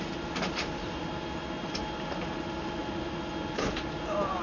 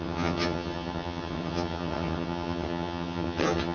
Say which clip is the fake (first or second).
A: second